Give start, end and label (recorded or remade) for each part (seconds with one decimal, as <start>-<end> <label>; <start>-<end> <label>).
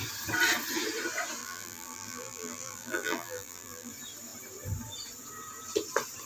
0.0-1.4 recorded; 1.4-3.9 remade; 3.9-6.3 recorded